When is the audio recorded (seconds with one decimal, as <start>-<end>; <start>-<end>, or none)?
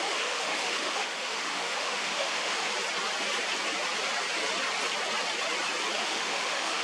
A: 2.7-6.0